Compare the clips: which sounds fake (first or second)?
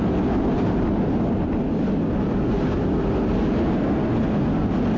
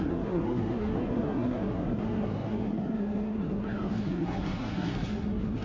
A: second